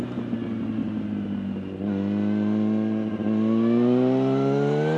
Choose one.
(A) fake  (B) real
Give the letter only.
B